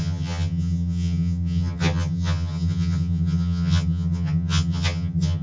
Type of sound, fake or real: fake